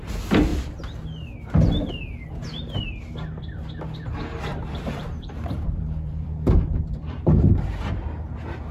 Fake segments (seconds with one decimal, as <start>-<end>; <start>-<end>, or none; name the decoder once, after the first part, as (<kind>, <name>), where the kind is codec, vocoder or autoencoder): 4.5-8.2 (vocoder, BigVGAN v2)